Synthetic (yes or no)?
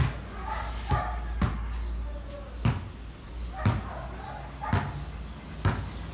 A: no